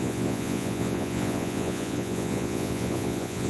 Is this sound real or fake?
fake